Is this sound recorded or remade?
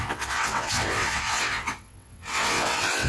remade